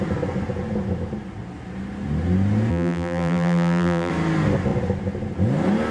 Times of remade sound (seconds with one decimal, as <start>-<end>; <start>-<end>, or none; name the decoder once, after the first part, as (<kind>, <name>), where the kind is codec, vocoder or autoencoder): 2.7-4.1 (vocoder, BigVGAN v2)